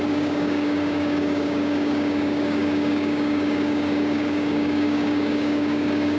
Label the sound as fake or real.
fake